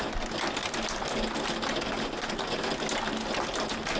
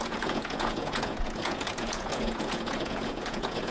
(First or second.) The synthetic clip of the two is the second